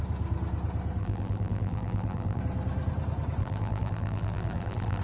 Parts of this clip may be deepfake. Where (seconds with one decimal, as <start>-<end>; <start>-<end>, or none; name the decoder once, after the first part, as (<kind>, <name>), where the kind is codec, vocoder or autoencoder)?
1.0-2.4 (vocoder, BigVGAN v2); 3.4-5.0